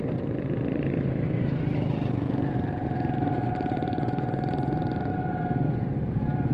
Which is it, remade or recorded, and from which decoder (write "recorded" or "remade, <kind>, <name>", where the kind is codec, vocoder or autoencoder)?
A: remade, vocoder, BigVGAN v2